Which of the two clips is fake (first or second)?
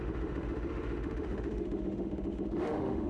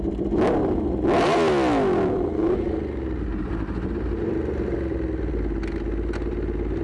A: first